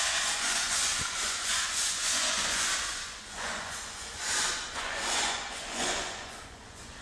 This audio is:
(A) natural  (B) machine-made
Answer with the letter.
B